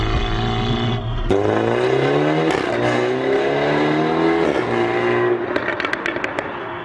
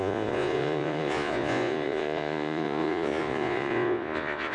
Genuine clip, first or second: first